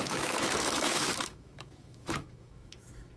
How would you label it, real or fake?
fake